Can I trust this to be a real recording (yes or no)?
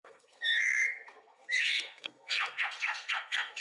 no